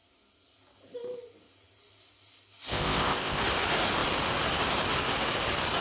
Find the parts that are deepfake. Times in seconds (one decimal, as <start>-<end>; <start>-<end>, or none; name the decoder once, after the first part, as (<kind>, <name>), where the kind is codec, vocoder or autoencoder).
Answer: 2.7-3.4 (codec, ZipCodec)